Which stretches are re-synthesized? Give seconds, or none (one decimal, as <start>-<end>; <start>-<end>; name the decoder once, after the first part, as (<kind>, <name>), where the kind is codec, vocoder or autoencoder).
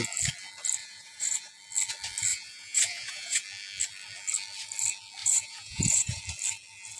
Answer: 0.8-1.5 (vocoder, Vocos); 2.3-3.4; 5.2-6.2